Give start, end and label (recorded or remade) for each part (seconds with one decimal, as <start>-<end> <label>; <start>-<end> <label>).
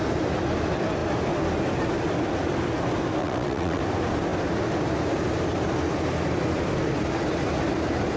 0.0-3.2 recorded; 3.2-3.8 remade; 3.8-8.2 recorded